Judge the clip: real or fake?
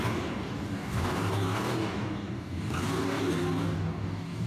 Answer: fake